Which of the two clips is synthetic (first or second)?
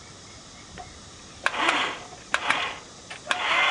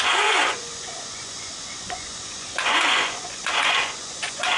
second